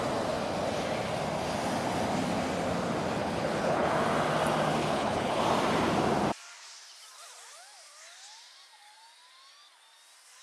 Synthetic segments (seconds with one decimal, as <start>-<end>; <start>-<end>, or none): 3.2-3.9; 4.8-5.4